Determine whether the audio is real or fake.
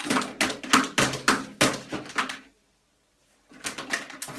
real